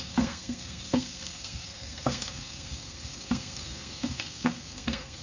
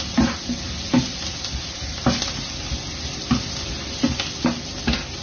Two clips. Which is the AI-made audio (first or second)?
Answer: first